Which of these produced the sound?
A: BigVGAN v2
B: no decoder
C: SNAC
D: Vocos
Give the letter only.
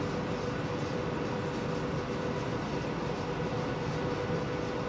B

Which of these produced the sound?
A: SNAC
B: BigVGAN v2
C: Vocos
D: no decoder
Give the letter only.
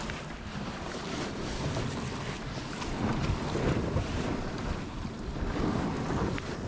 D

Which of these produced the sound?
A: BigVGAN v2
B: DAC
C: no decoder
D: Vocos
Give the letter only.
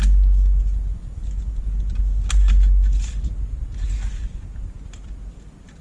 C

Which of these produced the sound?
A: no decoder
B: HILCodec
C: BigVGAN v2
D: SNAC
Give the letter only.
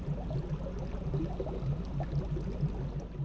A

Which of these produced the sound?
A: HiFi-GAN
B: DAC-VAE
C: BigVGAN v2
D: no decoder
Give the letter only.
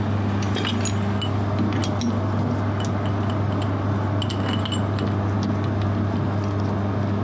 D